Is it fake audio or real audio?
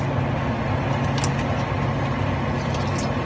real